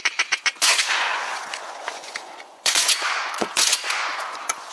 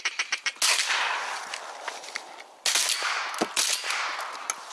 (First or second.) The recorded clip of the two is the second